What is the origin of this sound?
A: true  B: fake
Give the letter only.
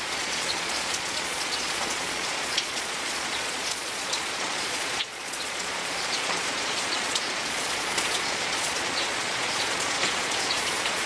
B